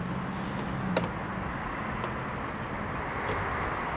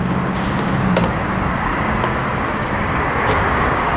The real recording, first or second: first